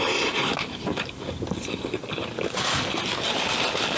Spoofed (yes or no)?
no